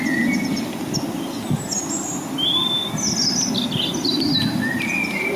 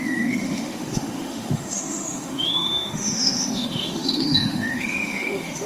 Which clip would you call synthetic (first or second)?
second